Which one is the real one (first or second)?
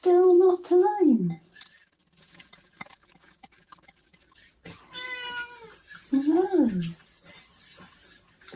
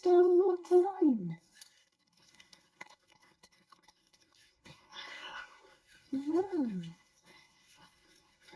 first